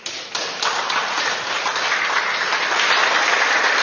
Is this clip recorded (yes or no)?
no